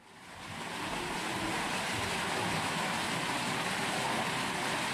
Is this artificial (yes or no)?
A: no